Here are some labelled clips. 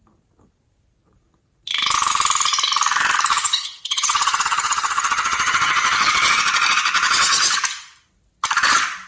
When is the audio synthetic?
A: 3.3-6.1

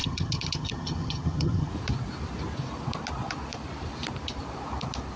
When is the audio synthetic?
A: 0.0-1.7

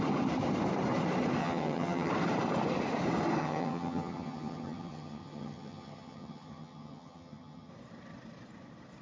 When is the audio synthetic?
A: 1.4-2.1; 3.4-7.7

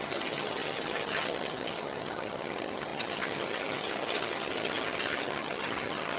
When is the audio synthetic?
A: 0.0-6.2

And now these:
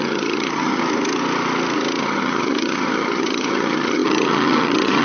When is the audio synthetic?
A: 0.0-0.8; 2.0-5.0

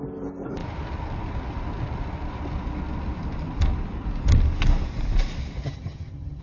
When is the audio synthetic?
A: 5.6-6.4

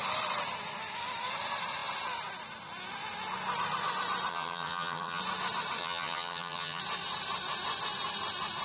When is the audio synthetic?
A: 4.3-5.2; 5.8-6.8

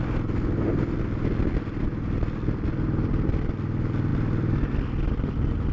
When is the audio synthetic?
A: none